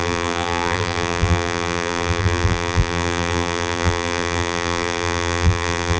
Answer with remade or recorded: remade